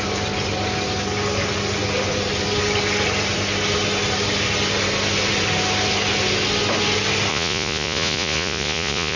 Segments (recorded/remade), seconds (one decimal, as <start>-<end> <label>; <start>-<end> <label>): 0.0-7.3 recorded; 7.3-9.2 remade

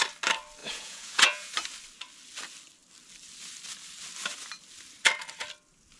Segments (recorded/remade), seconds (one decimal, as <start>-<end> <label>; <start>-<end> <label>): 0.0-0.6 recorded; 0.6-1.5 remade; 1.5-6.0 recorded

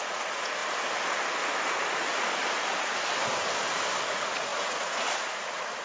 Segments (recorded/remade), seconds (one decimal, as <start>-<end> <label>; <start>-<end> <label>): 0.0-0.6 remade; 0.6-4.1 recorded; 4.1-5.8 remade

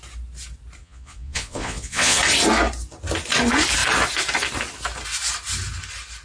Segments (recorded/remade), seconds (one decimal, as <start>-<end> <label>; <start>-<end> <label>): 0.0-0.8 recorded; 0.8-2.2 remade; 2.2-6.2 recorded